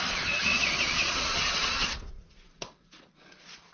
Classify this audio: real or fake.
fake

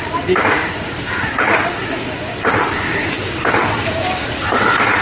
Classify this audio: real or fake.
fake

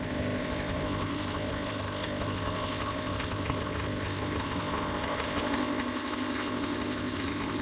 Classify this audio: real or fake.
fake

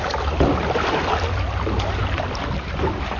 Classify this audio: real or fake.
real